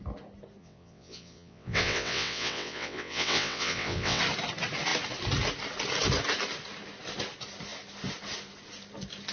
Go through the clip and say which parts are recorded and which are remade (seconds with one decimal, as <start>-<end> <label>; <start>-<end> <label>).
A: 0.0-0.6 recorded; 0.6-4.2 remade; 4.2-9.3 recorded